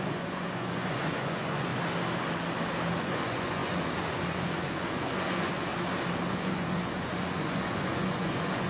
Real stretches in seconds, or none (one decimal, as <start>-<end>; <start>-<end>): 1.7-3.0; 5.7-6.3